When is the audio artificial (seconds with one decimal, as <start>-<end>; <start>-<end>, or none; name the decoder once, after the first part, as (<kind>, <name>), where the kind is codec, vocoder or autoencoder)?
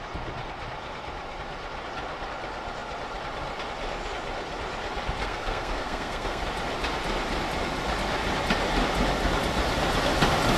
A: 5.2-6.4 (codec, SNAC)